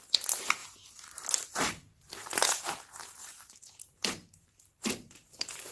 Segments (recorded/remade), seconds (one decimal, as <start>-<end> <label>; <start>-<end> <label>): 0.0-0.6 recorded; 0.6-2.5 remade; 2.5-3.2 recorded; 3.2-5.7 remade